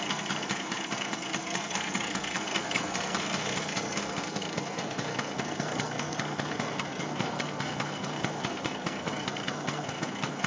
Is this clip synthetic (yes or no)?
yes